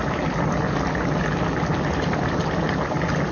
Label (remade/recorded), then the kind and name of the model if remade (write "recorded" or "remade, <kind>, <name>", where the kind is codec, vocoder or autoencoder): recorded